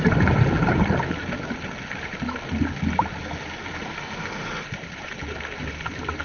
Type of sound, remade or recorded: recorded